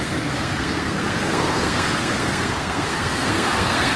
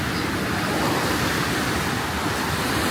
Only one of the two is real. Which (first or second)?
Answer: second